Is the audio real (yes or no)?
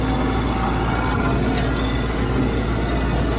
yes